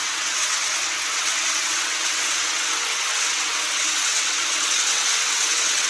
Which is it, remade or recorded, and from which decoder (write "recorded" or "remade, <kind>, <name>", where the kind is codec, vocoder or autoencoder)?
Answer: remade, vocoder, WaveNeXt